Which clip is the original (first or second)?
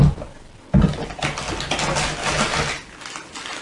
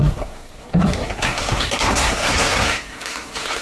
first